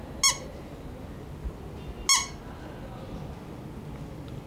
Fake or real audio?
real